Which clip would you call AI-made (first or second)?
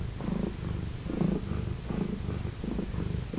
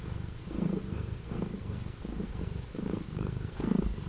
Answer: second